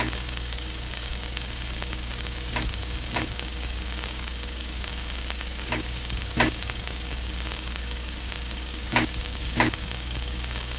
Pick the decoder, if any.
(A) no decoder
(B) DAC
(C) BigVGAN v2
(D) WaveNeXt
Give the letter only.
B